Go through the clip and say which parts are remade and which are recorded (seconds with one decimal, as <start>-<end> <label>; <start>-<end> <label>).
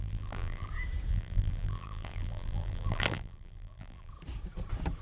0.0-0.7 remade; 0.7-1.1 recorded; 1.1-4.1 remade; 4.1-5.0 recorded